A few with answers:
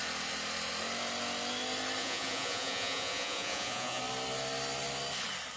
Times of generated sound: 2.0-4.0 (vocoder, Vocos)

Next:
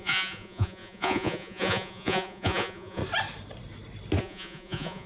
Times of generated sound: 0.0-3.0 (vocoder, Vocos); 4.2-5.1

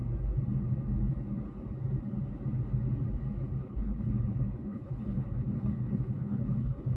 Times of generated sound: 3.6-7.0 (codec, HILCodec)

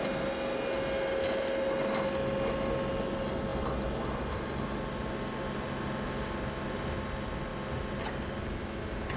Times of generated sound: none

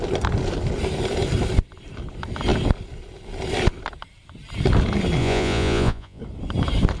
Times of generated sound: 5.2-6.2 (vocoder, Vocos)